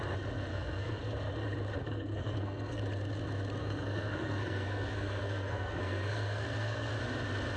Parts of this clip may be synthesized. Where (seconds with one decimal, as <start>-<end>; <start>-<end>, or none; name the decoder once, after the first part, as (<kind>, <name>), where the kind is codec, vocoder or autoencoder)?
0.5-1.0 (codec, SNAC); 1.8-2.8; 3.6-6.9